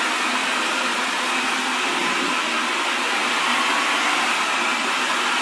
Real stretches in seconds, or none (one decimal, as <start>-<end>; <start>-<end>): 0.0-0.9; 1.4-5.4